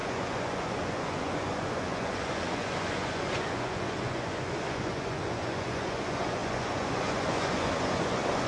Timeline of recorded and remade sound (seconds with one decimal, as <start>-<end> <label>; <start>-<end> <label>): 0.0-8.5 remade